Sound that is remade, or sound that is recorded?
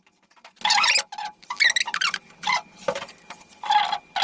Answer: recorded